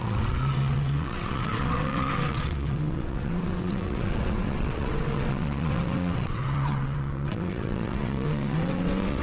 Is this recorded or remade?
remade